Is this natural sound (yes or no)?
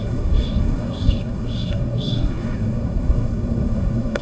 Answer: no